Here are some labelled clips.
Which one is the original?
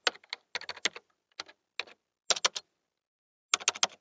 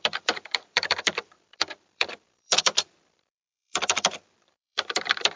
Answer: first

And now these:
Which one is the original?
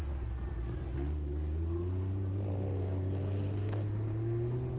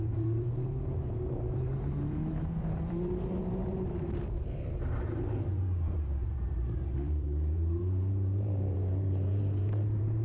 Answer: first